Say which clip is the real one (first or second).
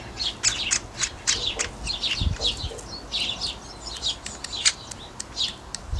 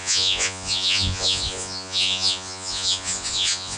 first